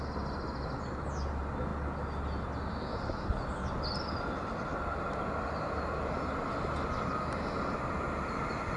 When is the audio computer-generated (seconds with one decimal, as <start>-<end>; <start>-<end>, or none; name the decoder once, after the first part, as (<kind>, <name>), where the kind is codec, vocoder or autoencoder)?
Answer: none